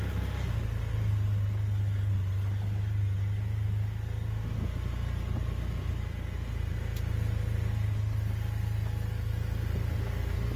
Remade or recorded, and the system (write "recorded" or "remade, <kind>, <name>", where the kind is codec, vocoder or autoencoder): recorded